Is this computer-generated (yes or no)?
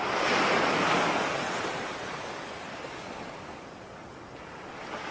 no